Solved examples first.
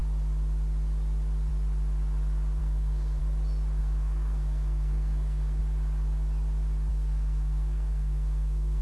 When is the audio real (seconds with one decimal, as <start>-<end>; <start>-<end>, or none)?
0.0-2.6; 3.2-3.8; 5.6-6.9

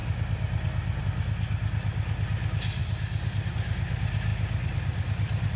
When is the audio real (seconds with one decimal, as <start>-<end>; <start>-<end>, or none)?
0.0-5.6

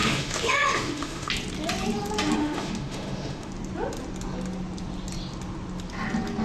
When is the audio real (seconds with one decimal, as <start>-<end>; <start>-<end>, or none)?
1.3-2.4; 3.5-6.4